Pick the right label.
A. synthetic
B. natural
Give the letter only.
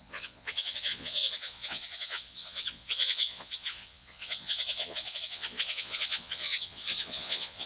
A